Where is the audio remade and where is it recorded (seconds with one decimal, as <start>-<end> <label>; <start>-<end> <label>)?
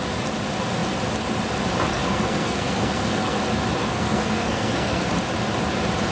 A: 0.0-1.9 recorded; 1.9-3.4 remade; 3.4-3.8 recorded; 3.8-5.1 remade; 5.1-6.1 recorded